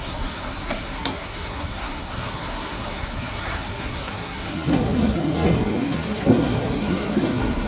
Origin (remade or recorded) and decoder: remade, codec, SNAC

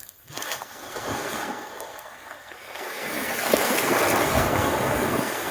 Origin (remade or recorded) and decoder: remade, codec, SNAC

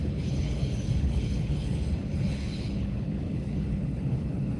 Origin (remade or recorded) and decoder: remade, codec, HILCodec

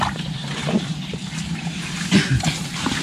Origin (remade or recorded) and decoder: remade, vocoder, BigVGAN v2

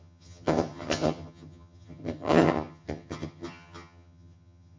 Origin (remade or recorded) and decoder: remade, vocoder, HiFi-GAN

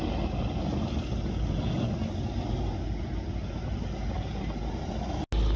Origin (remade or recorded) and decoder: recorded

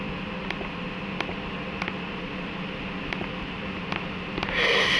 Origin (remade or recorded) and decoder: recorded